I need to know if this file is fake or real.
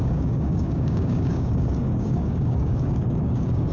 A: fake